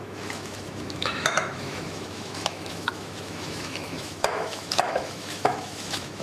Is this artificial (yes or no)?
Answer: yes